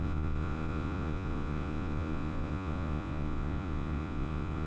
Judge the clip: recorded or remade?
remade